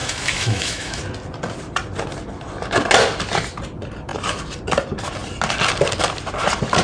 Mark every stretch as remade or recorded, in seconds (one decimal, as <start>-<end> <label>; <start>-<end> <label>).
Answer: 0.0-1.0 remade; 1.0-6.8 recorded